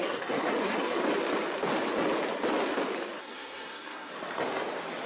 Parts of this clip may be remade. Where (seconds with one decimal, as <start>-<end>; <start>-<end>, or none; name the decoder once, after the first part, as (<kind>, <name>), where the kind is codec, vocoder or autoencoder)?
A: 0.0-1.0 (codec, SNAC); 3.2-4.1